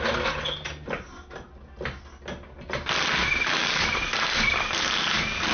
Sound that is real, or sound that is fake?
real